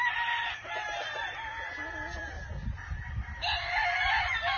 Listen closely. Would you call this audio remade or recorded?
recorded